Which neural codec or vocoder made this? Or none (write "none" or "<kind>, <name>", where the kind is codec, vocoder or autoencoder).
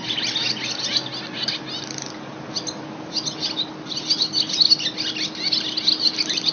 none